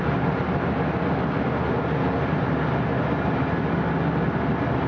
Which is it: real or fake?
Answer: real